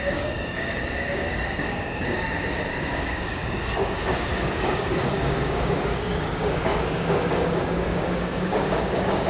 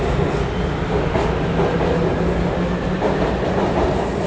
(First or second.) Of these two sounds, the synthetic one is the first